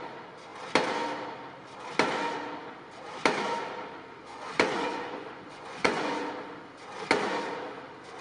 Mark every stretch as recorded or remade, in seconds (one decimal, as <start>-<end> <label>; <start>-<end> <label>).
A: 0.0-4.3 recorded; 4.3-6.3 remade; 6.3-8.2 recorded